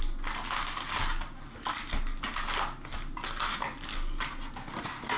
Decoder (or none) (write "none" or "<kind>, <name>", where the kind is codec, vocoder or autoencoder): none